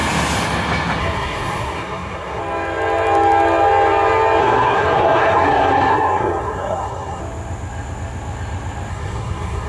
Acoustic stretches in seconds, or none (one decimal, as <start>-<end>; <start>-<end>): 0.0-1.0; 2.4-4.4; 7.2-8.9